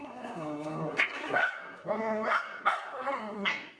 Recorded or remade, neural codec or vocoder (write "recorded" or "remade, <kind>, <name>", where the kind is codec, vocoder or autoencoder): remade, codec, SNAC